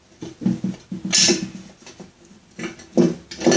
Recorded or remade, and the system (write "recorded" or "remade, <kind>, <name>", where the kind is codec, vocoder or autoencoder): recorded